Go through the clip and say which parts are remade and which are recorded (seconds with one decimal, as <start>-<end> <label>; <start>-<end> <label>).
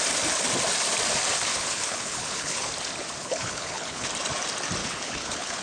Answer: 0.0-1.5 recorded; 1.5-2.7 remade; 2.7-3.2 recorded; 3.2-4.1 remade; 4.1-4.8 recorded; 4.8-5.6 remade